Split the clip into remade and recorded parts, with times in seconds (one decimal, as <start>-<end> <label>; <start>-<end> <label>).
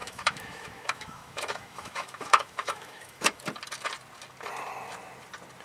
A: 0.0-3.4 remade; 3.4-5.6 recorded